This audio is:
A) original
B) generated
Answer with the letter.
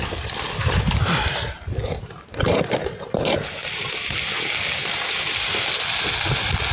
A